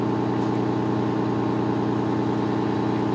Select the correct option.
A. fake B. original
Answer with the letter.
B